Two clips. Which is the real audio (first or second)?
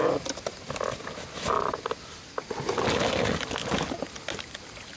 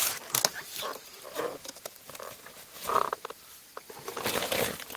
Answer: first